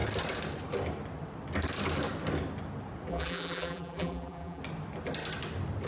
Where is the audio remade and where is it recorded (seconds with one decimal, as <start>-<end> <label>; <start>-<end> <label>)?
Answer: 0.0-3.1 recorded; 3.1-4.6 remade; 4.6-5.9 recorded